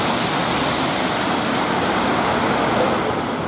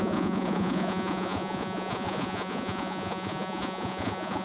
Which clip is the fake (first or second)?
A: second